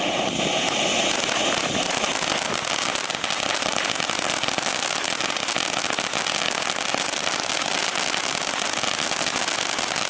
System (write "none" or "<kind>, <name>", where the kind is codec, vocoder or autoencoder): none